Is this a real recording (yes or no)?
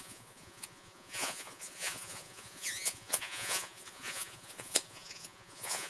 no